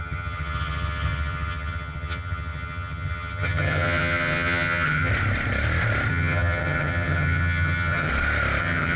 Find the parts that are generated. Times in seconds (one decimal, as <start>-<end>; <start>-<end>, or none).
0.0-5.1; 6.1-8.1; 8.6-9.0